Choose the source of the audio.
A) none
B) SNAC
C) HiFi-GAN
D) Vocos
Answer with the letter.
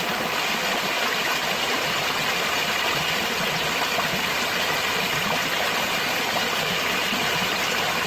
A